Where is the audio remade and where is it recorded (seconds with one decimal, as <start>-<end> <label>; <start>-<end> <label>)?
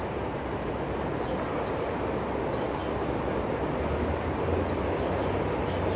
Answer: 0.0-1.3 remade; 1.3-6.0 recorded